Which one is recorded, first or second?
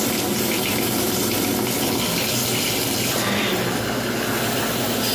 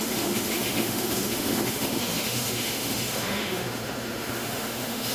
first